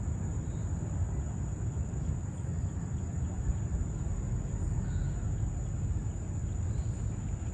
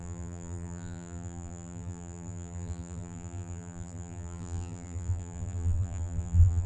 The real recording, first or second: first